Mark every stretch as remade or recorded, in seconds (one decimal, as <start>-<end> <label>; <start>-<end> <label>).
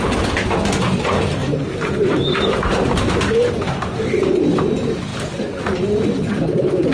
0.0-1.4 recorded; 1.4-4.4 remade; 4.4-6.9 recorded